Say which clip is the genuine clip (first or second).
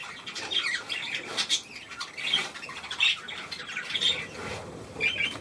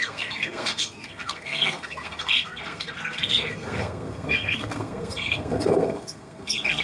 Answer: first